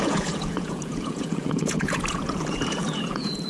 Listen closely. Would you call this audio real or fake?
fake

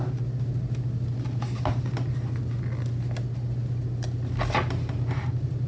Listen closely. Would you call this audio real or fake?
real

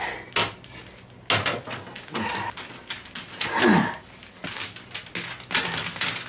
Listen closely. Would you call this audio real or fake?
real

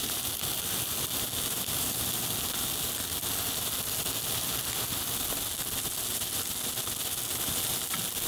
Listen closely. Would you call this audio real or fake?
real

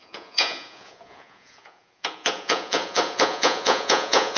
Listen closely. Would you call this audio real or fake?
fake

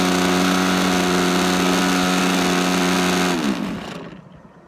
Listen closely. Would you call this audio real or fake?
real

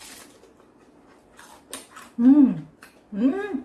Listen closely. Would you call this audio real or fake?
real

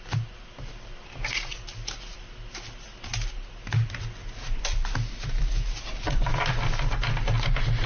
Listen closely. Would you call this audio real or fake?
real